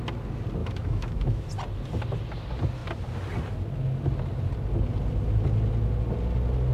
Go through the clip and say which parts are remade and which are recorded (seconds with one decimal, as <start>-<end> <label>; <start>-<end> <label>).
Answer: 0.0-0.6 recorded; 0.6-1.5 remade; 1.5-6.7 recorded